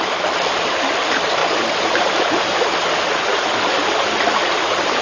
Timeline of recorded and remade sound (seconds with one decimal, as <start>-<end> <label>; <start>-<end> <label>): 0.0-1.4 remade; 1.4-4.4 recorded; 4.4-5.0 remade